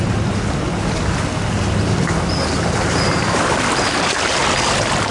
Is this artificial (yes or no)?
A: no